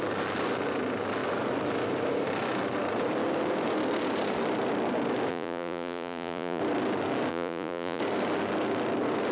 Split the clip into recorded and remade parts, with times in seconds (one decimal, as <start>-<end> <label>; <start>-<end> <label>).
0.0-5.3 recorded; 5.3-6.6 remade; 6.6-7.3 recorded; 7.3-8.0 remade; 8.0-9.3 recorded